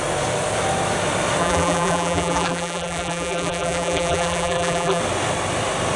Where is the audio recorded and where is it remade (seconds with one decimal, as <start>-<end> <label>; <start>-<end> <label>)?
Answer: 0.0-1.4 recorded; 1.4-5.0 remade; 5.0-6.0 recorded